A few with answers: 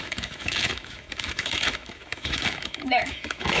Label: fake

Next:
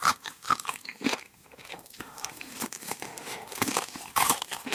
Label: fake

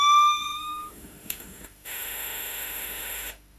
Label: fake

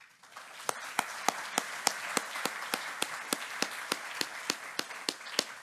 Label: real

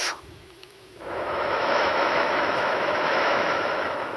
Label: fake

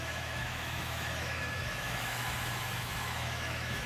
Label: fake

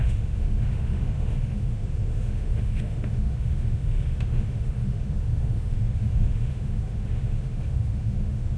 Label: fake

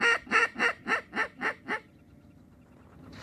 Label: real